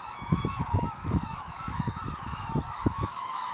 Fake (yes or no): yes